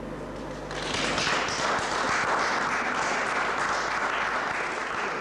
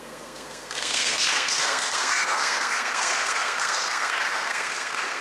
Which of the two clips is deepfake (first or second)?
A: second